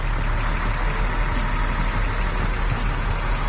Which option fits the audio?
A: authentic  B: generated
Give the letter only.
A